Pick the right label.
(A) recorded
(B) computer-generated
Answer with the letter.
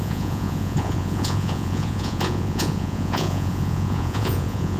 B